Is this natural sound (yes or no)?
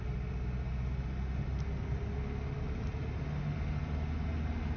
yes